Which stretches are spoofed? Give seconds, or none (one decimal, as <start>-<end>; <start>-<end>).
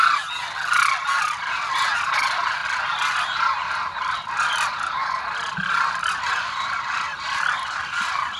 none